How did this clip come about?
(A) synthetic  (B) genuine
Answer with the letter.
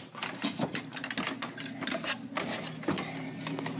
B